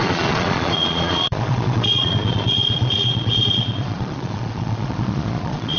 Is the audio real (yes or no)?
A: no